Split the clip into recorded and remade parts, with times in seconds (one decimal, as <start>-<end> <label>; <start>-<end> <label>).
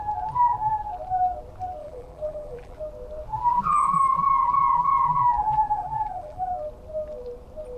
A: 0.0-1.8 recorded; 1.8-2.8 remade; 2.8-5.4 recorded; 5.4-6.5 remade; 6.5-7.8 recorded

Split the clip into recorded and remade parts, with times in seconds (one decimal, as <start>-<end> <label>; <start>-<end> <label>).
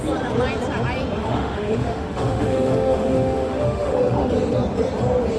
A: 0.0-1.2 recorded; 1.2-4.3 remade; 4.3-5.4 recorded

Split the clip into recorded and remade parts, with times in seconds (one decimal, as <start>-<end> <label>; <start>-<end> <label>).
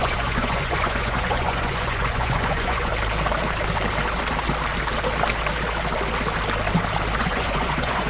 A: 0.0-2.9 remade; 2.9-7.2 recorded; 7.2-8.1 remade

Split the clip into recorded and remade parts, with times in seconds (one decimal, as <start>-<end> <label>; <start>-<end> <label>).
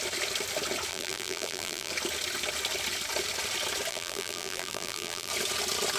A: 0.0-0.9 recorded; 0.9-1.9 remade; 1.9-3.9 recorded; 3.9-5.3 remade; 5.3-6.0 recorded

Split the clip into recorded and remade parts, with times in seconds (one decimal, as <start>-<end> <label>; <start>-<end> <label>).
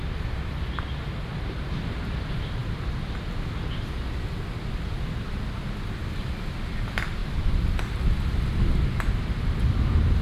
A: 0.0-10.2 recorded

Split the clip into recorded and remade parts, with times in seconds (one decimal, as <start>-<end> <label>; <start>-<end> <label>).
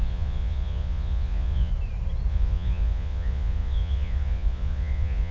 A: 0.0-1.7 remade; 1.7-2.3 recorded; 2.3-5.3 remade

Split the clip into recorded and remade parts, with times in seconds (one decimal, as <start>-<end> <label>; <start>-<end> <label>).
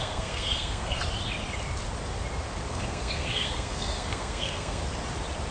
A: 0.0-1.0 remade; 1.0-2.7 recorded; 2.7-4.8 remade; 4.8-5.5 recorded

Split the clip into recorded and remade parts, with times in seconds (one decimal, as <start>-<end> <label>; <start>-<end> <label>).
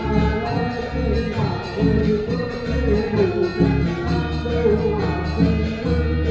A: 0.0-2.0 recorded; 2.0-2.5 remade; 2.5-6.3 recorded